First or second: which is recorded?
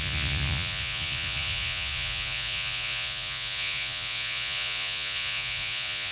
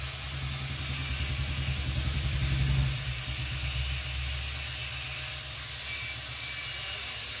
second